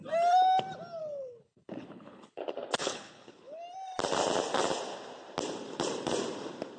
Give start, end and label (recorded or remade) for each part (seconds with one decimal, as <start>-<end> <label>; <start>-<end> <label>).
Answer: 0.0-1.0 recorded; 1.0-2.4 remade; 2.4-2.8 recorded; 2.8-3.6 remade; 3.6-6.8 recorded